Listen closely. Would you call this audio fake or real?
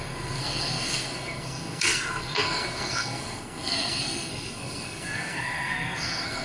fake